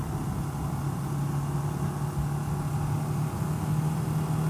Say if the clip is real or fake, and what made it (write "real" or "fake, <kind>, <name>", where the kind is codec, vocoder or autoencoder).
real